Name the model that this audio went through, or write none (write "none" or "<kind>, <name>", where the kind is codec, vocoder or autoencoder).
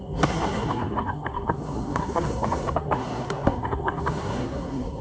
codec, SNAC